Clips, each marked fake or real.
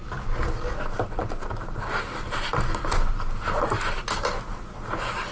real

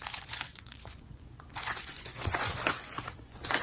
fake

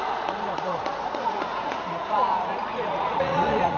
fake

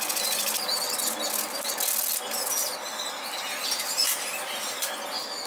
real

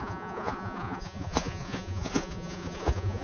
fake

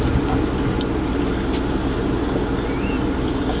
real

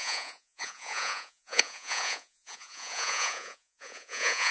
fake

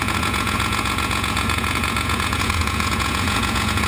fake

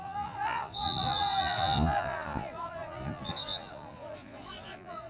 fake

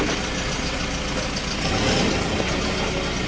real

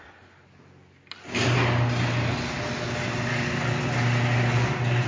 real